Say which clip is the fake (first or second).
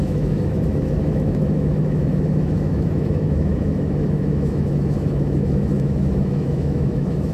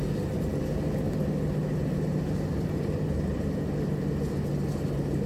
first